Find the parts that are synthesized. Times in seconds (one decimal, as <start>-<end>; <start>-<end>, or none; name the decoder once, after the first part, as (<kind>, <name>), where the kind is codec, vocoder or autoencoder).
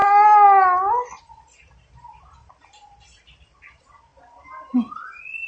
none